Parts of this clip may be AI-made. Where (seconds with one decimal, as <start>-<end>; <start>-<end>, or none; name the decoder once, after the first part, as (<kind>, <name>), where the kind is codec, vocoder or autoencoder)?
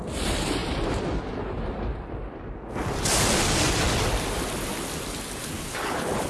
5.4-6.3 (codec, HILCodec)